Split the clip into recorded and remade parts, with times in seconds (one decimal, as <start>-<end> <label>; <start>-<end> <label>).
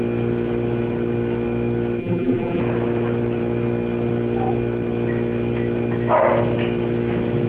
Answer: 0.0-2.0 recorded; 2.0-2.6 remade; 2.6-7.5 recorded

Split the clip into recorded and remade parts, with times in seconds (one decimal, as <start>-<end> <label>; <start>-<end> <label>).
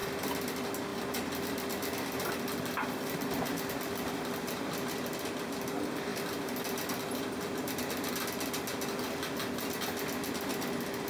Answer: 0.0-0.5 remade; 0.5-0.9 recorded; 0.9-3.7 remade; 3.7-6.1 recorded; 6.1-8.1 remade; 8.1-11.1 recorded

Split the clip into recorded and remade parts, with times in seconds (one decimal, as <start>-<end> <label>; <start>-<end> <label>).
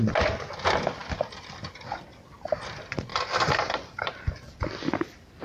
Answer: 0.0-1.0 recorded; 1.0-2.5 remade; 2.5-3.1 recorded; 3.1-5.4 remade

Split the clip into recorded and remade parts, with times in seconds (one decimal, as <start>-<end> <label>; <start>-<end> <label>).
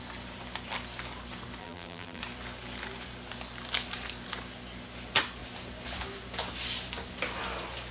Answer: 0.0-1.6 recorded; 1.6-2.2 remade; 2.2-7.9 recorded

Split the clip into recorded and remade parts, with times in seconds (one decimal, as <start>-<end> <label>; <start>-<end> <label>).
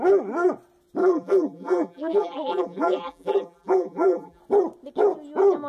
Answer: 0.0-1.0 recorded; 1.0-4.4 remade; 4.4-5.7 recorded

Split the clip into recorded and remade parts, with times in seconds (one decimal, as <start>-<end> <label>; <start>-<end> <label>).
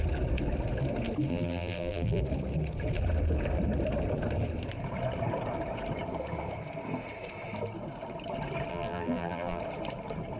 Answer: 0.0-1.3 recorded; 1.3-2.2 remade; 2.2-8.7 recorded; 8.7-9.6 remade; 9.6-10.4 recorded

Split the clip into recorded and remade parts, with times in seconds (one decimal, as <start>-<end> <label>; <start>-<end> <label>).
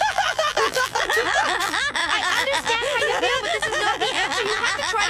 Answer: 0.0-5.1 remade